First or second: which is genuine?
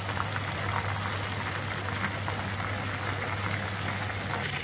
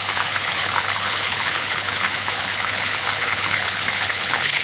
first